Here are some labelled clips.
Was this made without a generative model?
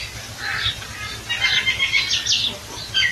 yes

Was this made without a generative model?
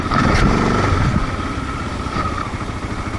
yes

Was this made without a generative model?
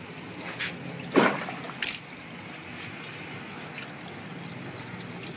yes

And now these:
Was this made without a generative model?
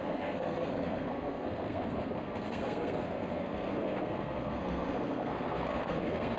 no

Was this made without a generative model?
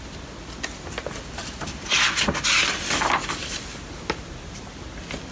yes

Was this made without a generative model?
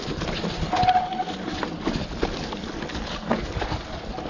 yes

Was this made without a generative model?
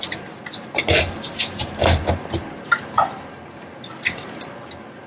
yes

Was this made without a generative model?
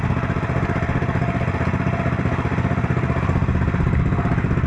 yes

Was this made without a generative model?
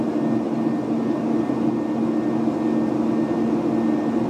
yes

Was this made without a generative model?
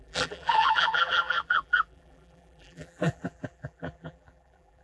no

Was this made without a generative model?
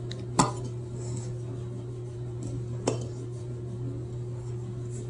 yes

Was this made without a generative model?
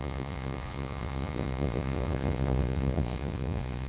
no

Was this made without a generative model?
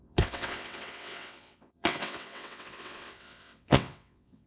no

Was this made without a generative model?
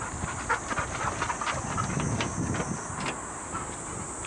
yes